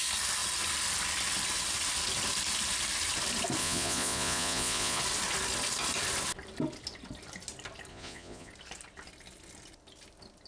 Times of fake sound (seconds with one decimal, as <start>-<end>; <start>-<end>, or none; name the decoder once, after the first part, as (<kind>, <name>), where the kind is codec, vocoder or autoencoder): 3.6-5.0 (vocoder, Vocos); 7.9-8.5